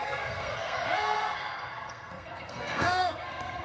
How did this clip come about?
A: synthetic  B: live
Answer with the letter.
A